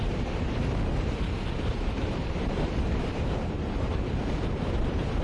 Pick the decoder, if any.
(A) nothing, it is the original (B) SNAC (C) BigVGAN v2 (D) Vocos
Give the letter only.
C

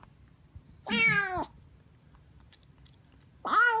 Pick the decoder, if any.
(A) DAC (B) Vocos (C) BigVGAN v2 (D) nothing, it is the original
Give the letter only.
D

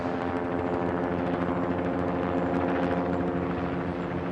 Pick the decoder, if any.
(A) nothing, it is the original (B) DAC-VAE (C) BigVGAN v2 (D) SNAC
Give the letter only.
A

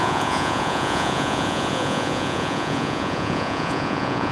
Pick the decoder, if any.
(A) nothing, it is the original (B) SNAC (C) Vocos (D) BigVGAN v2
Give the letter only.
C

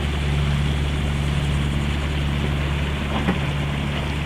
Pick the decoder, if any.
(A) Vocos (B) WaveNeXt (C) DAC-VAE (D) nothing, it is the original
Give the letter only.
D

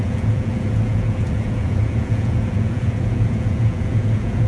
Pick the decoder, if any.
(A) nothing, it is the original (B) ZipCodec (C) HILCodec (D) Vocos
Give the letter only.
D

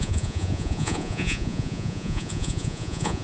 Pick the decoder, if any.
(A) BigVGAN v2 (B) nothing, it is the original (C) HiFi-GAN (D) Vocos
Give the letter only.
D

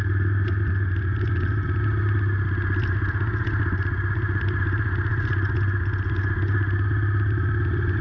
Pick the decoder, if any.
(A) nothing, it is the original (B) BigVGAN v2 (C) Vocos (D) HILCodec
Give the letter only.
A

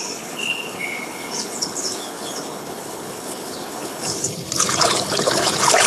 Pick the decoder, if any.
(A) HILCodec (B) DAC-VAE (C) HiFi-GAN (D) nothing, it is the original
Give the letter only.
A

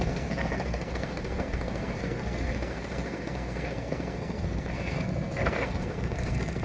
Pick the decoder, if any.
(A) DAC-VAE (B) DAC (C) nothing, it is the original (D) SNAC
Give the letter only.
D